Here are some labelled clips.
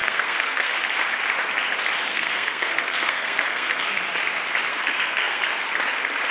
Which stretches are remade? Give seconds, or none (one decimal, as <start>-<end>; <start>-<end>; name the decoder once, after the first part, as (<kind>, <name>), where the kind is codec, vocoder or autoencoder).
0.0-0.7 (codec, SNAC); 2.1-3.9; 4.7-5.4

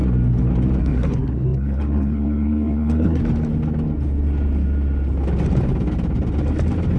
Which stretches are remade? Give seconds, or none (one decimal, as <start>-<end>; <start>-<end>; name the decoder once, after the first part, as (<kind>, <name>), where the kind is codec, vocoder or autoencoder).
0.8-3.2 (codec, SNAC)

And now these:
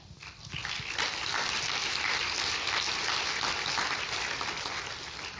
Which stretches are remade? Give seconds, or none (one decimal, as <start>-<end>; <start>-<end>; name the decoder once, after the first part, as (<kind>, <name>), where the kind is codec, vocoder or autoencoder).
none